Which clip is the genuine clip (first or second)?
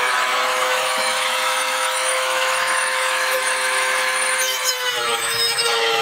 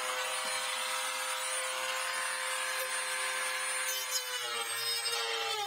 second